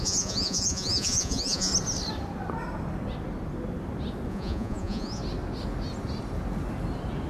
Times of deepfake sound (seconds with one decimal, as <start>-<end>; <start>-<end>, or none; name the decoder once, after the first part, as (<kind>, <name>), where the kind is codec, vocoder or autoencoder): 0.0-1.7 (vocoder, Vocos); 4.3-5.2

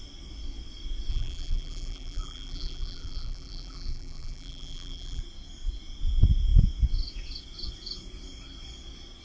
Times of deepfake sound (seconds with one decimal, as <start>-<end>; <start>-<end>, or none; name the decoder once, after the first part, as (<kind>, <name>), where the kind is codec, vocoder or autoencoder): 1.1-5.2 (vocoder, BigVGAN v2)

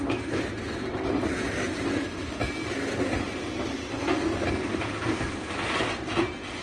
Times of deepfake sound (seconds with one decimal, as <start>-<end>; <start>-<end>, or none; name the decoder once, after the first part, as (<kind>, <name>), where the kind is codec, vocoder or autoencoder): none

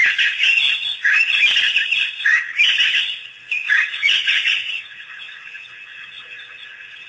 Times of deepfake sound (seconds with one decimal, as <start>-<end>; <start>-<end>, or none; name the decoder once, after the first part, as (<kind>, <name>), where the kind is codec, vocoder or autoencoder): 3.9-5.5 (vocoder, Vocos)

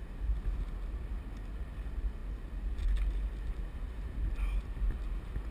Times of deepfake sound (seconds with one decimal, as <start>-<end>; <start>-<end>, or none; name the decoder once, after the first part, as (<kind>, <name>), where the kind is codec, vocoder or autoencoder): none

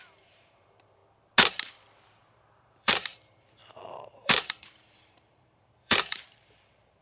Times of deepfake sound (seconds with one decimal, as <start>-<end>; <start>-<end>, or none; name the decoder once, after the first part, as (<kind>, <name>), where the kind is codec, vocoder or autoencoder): 0.0-1.0 (vocoder, BigVGAN v2); 2.6-7.0

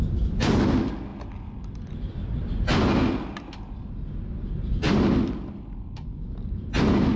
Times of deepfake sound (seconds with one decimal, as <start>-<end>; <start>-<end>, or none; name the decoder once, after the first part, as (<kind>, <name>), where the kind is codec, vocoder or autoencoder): none

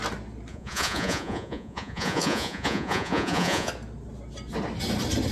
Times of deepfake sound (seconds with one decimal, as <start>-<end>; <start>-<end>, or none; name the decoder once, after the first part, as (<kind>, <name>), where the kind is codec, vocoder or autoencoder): 0.5-3.7 (vocoder, Vocos)